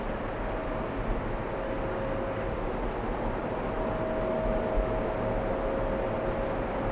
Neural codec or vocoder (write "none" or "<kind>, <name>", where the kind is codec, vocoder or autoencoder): none